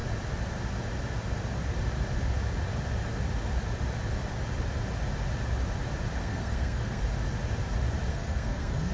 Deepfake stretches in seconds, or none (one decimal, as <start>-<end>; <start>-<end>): 6.2-7.0; 8.1-8.9

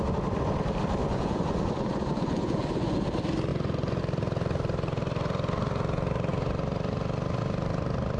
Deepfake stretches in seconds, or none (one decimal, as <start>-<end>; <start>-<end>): 1.0-3.0; 3.5-4.0

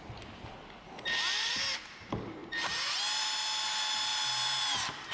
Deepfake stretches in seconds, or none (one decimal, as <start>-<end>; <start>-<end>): none